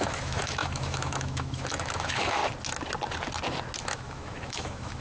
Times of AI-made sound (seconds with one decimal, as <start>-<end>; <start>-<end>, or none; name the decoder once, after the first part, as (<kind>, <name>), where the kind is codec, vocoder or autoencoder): 0.0-2.4 (autoencoder, DAC-VAE); 3.8-5.0